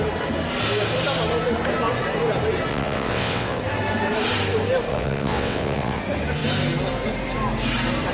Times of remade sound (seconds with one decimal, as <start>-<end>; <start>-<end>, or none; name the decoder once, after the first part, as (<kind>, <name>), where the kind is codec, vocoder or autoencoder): 2.7-3.6 (vocoder, WaveNeXt); 4.9-6.0